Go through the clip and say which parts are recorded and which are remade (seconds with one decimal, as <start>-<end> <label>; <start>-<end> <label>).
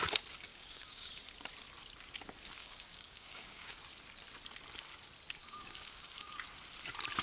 0.0-0.5 recorded; 0.5-1.1 remade; 1.1-2.6 recorded; 2.6-3.8 remade; 3.8-5.4 recorded; 5.4-6.3 remade; 6.3-7.2 recorded